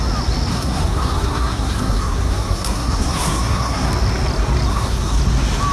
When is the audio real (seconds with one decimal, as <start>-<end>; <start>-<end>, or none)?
0.0-0.5; 3.9-4.7; 5.2-5.7